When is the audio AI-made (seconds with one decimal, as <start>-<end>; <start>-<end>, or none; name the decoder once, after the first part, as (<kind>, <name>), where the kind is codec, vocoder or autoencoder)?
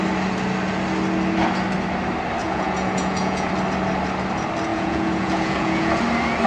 2.4-3.5 (vocoder, Vocos); 4.7-6.0